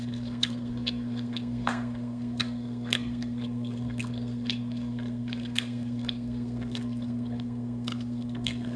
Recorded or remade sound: remade